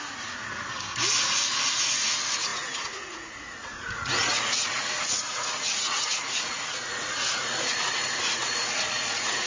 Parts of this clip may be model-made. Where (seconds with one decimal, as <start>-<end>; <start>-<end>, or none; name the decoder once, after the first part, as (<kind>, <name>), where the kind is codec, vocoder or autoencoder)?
0.0-0.4 (vocoder, Vocos); 1.8-9.5